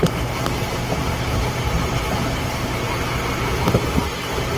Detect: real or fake real